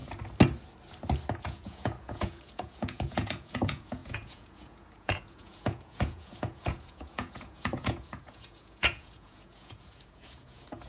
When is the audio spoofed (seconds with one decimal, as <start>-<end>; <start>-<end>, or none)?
1.4-10.9